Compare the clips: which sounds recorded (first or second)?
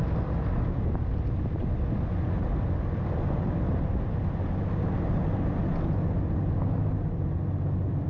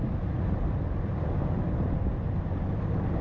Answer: first